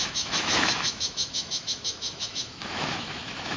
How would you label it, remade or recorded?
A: remade